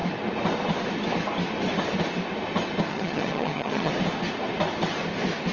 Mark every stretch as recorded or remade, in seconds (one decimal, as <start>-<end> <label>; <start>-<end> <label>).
0.0-2.9 recorded; 2.9-3.9 remade; 3.9-5.5 recorded